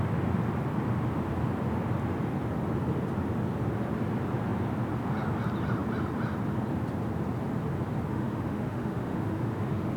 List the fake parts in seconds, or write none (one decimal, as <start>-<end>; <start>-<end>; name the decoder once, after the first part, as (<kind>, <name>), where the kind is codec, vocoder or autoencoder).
8.1-10.0 (autoencoder, DAC-VAE)